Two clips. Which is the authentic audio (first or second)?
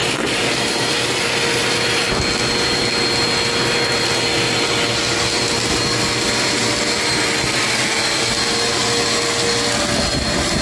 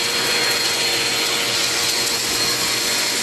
first